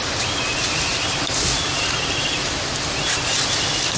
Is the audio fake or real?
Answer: real